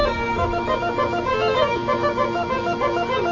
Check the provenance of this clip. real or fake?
real